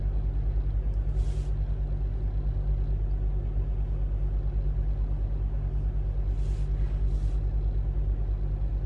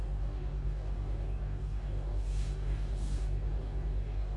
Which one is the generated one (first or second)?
second